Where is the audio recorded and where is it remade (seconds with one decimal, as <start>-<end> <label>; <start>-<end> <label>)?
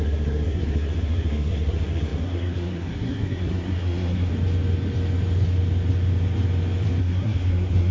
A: 0.0-4.3 remade; 4.3-7.0 recorded; 7.0-7.9 remade